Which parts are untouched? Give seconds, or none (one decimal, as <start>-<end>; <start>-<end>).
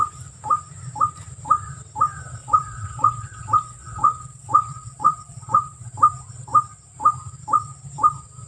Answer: 0.0-2.4; 5.9-8.5